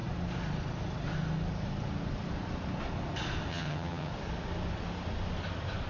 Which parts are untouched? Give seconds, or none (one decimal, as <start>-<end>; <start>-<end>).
0.0-3.5; 4.1-5.9